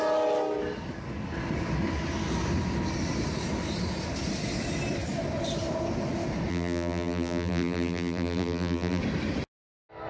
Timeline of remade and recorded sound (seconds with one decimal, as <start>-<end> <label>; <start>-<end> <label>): 0.0-6.5 recorded; 6.5-9.0 remade; 9.0-10.1 recorded